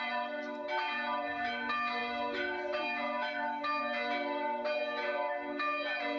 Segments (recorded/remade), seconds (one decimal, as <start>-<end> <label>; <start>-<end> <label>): 0.0-6.2 recorded